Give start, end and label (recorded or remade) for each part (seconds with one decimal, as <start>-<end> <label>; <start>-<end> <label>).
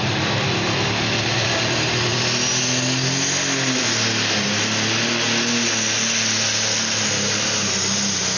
0.0-8.4 recorded